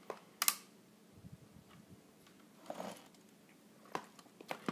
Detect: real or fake real